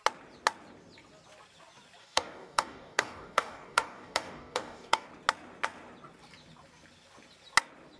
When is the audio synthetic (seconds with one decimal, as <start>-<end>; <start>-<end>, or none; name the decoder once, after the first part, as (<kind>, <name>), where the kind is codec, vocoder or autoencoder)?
2.0-5.1 (codec, DAC)